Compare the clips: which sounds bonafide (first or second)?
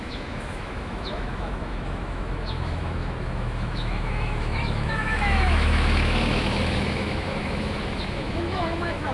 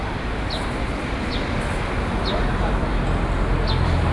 second